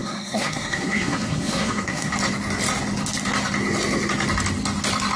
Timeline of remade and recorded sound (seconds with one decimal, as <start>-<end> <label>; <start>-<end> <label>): 0.0-2.1 remade; 2.1-5.2 recorded